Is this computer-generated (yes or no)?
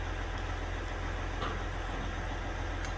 no